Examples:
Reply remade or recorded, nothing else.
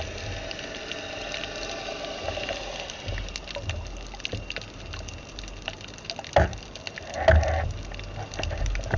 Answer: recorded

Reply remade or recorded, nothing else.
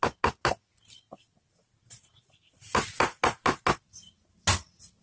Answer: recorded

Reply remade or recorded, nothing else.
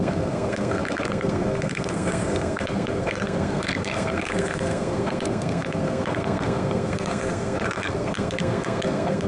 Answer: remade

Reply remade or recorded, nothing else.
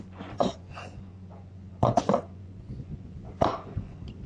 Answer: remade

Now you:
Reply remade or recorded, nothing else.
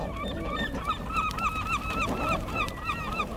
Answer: remade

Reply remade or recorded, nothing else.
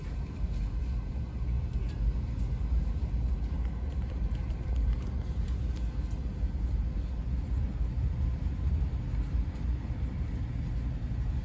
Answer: recorded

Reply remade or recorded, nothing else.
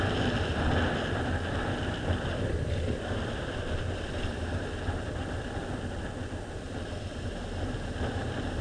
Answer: recorded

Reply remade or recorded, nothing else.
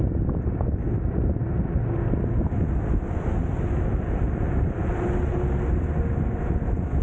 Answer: recorded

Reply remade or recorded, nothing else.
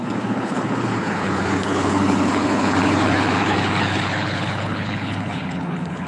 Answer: remade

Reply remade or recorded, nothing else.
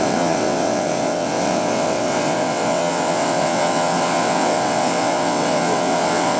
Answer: remade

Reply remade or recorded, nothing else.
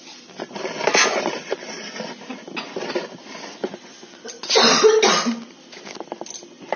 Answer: recorded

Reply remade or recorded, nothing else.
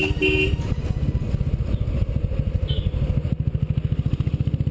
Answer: recorded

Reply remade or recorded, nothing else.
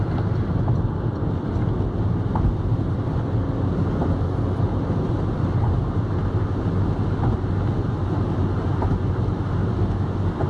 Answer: recorded